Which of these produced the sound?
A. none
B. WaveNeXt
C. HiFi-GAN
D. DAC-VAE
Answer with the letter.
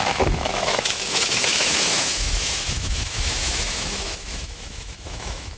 D